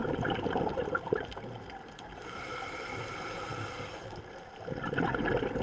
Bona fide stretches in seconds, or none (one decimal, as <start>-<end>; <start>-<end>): 2.4-3.5; 4.2-5.6